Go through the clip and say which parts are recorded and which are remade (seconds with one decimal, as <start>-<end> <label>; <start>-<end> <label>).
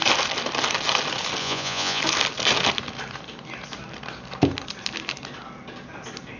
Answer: 0.0-1.4 recorded; 1.4-2.0 remade; 2.0-6.4 recorded